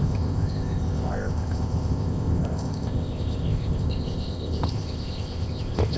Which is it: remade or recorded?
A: remade